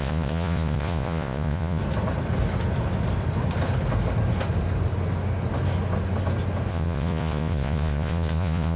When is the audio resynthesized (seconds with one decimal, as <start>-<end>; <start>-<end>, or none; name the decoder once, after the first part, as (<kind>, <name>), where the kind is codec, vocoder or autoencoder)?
0.0-1.8 (vocoder, Vocos); 6.7-8.8